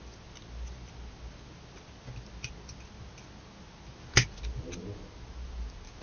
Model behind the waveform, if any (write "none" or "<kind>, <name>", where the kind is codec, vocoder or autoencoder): none